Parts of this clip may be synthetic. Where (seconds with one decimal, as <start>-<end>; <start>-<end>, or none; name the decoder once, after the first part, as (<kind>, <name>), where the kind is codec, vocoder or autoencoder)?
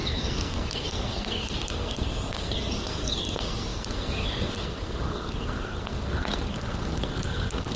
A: 0.0-7.8 (codec, SNAC)